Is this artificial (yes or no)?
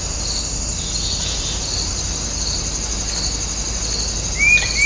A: no